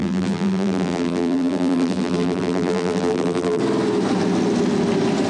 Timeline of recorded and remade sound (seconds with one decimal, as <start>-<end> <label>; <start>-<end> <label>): 0.0-3.6 remade; 3.6-5.3 recorded